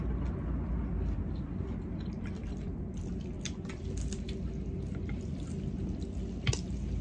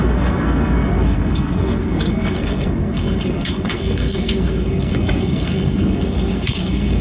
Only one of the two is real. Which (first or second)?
first